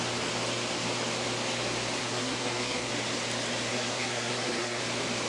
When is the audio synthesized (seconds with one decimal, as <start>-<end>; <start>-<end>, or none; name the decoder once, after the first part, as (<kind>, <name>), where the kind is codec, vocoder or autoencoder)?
2.0-2.9 (codec, SNAC); 3.7-4.8